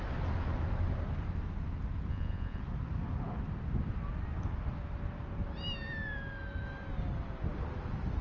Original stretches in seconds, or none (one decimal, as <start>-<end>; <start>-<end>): 0.0-2.1; 2.6-8.2